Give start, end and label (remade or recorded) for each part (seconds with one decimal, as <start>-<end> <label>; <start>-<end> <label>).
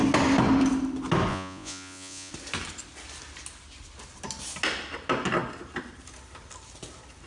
0.0-1.3 recorded; 1.3-2.3 remade; 2.3-7.3 recorded